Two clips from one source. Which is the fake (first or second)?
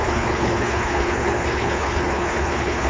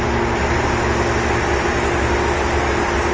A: first